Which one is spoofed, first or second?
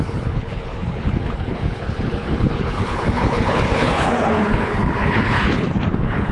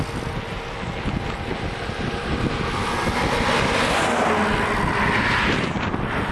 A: first